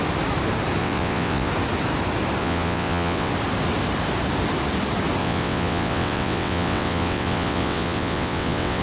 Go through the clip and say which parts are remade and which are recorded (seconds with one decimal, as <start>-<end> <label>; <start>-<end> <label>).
0.0-0.8 recorded; 0.8-1.5 remade; 1.5-2.4 recorded; 2.4-3.3 remade; 3.3-5.2 recorded; 5.2-8.8 remade